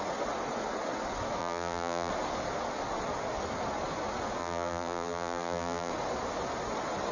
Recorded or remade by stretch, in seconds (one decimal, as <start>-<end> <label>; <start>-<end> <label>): 0.0-1.4 recorded; 1.4-2.1 remade; 2.1-4.4 recorded; 4.4-5.9 remade; 5.9-7.1 recorded